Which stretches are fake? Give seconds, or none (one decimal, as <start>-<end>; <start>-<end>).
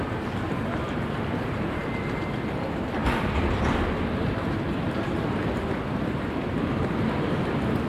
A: none